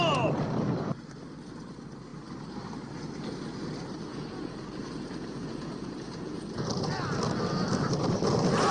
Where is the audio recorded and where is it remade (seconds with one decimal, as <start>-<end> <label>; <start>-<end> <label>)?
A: 0.0-4.1 recorded; 4.1-6.6 remade; 6.6-8.7 recorded